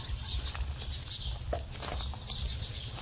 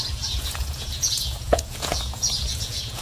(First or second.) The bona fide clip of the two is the first